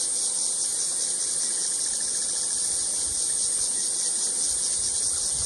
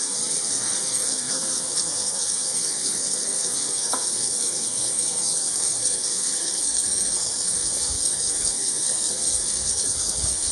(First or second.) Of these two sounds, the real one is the first